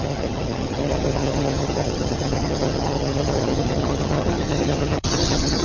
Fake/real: fake